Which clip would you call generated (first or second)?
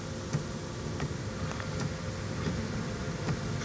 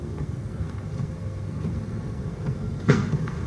second